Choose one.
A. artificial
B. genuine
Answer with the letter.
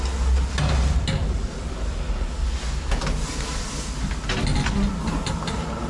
B